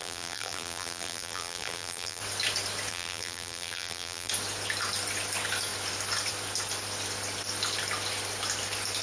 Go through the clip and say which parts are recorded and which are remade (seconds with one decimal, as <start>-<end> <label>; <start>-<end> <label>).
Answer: 0.0-2.2 remade; 2.2-2.9 recorded; 2.9-4.3 remade; 4.3-9.0 recorded